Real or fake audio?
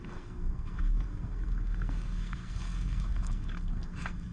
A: fake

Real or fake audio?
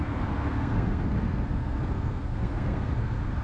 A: fake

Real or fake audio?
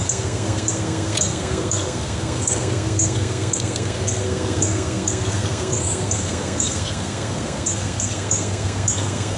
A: fake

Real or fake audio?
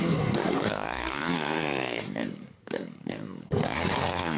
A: fake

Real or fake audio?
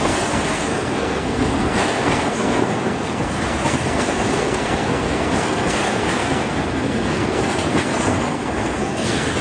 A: fake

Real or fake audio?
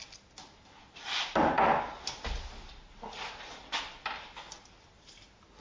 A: real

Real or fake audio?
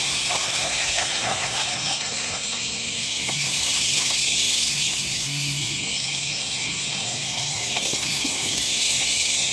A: fake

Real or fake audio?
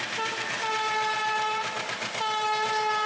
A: real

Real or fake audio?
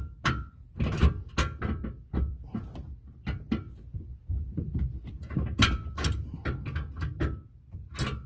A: real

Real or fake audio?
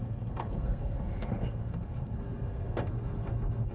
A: fake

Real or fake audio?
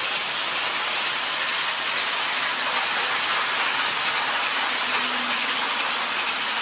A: real